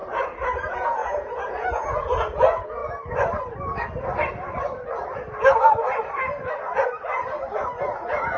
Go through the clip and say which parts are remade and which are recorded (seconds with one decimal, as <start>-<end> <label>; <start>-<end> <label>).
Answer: 0.0-0.6 recorded; 0.6-2.8 remade; 2.8-7.8 recorded; 7.8-8.4 remade